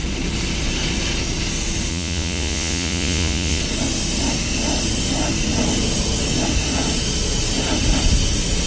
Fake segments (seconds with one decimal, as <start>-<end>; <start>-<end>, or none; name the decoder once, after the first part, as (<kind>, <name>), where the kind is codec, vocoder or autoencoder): 1.9-3.6 (vocoder, Vocos)